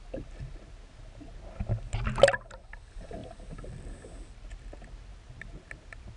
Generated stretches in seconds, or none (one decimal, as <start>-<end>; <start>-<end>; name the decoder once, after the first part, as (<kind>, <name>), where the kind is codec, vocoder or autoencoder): none